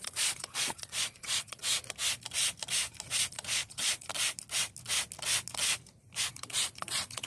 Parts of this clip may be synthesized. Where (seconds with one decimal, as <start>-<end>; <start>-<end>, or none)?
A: 0.0-1.6; 3.3-4.1; 6.3-7.3